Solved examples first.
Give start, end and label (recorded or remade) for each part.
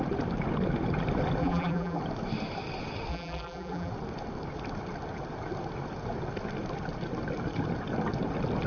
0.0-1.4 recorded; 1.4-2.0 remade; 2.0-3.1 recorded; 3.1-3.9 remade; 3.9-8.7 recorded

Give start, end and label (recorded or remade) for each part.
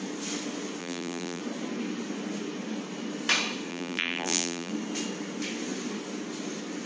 0.0-0.8 recorded; 0.8-1.4 remade; 1.4-3.7 recorded; 3.7-4.7 remade; 4.7-6.9 recorded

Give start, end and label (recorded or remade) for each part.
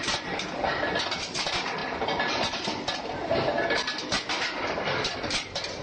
0.0-5.8 recorded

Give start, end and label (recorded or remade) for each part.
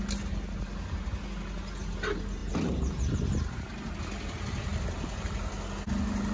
0.0-6.3 recorded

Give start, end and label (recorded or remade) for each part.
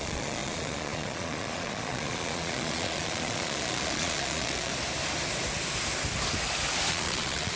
0.0-4.7 remade; 4.7-6.9 recorded; 6.9-7.6 remade